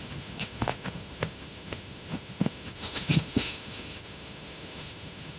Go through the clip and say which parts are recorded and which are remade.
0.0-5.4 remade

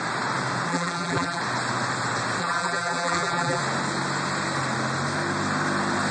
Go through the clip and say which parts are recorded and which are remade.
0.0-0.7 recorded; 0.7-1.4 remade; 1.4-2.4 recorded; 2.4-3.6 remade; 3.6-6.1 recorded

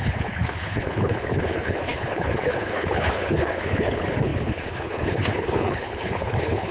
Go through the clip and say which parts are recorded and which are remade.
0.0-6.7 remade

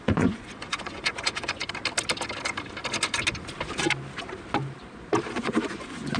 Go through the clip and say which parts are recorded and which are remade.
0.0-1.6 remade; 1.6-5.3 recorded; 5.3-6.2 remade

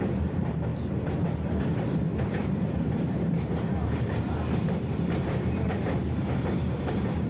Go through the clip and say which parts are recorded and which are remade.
0.0-0.7 remade; 0.7-2.2 recorded; 2.2-7.3 remade

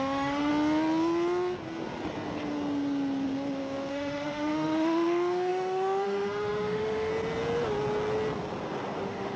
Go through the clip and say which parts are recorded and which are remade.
0.0-0.5 remade; 0.5-3.9 recorded; 3.9-7.1 remade; 7.1-9.0 recorded; 9.0-9.4 remade

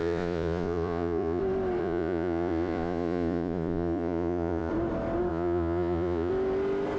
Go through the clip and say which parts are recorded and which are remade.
0.0-1.4 remade; 1.4-1.8 recorded; 1.8-4.7 remade; 4.7-5.3 recorded; 5.3-6.3 remade; 6.3-7.0 recorded

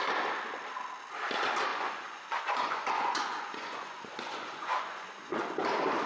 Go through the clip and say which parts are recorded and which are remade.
0.0-1.7 recorded; 1.7-5.4 remade; 5.4-6.1 recorded